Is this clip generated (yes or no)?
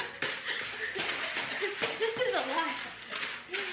no